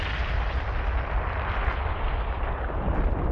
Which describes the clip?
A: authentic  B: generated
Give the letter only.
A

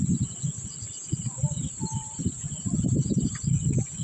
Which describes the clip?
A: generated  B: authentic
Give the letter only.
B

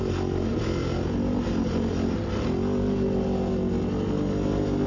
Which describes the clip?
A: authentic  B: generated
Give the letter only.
A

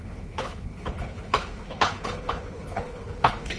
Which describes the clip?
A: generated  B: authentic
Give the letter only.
A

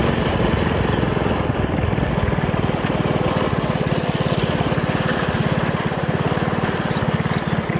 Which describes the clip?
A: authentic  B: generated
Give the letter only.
A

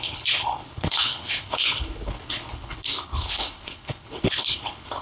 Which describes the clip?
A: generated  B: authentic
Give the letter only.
A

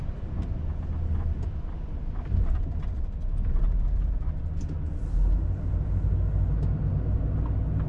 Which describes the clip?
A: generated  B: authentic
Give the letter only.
B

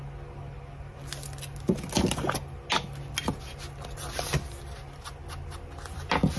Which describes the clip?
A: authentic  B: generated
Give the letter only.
A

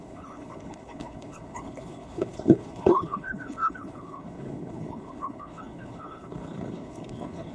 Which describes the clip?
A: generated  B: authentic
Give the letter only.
A